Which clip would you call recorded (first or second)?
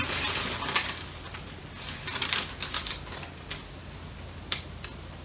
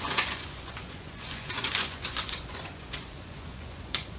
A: first